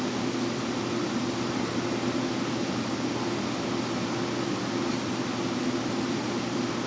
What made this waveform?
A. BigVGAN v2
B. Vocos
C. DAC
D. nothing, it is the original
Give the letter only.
D